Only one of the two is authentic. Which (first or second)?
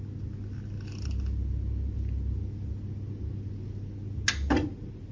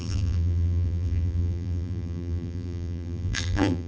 first